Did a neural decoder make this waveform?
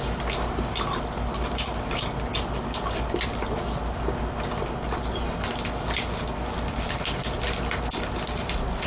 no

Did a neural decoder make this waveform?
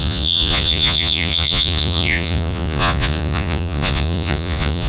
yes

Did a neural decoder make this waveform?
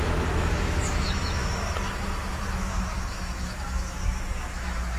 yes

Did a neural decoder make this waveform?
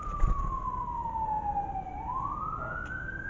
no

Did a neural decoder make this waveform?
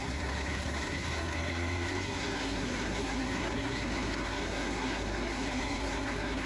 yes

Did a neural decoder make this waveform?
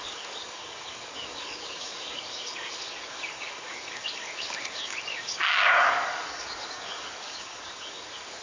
yes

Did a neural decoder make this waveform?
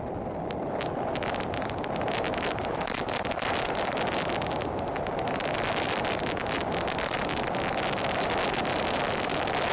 yes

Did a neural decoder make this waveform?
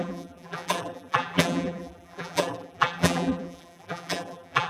yes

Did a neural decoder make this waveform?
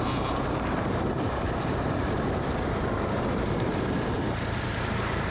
yes